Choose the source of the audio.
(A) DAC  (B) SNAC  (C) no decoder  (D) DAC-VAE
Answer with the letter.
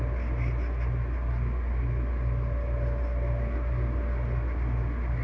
C